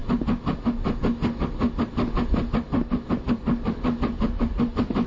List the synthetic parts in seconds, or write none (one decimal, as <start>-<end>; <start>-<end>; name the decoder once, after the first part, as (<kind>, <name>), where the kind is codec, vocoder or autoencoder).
none